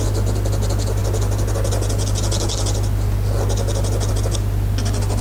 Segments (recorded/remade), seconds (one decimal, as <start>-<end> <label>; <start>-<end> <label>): 0.0-5.2 recorded